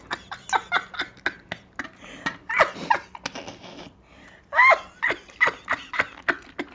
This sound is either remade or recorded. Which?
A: recorded